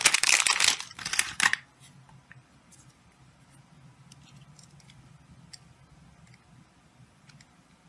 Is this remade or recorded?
recorded